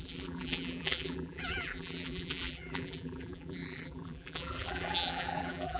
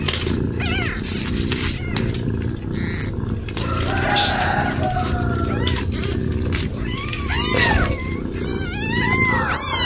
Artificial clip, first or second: first